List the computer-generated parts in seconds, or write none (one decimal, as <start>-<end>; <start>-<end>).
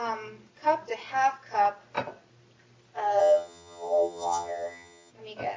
3.2-5.1